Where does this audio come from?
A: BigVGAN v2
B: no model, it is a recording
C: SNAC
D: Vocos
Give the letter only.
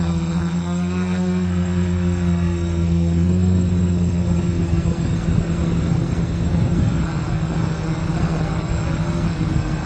C